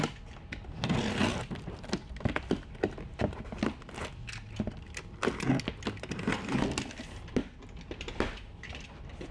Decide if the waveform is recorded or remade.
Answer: recorded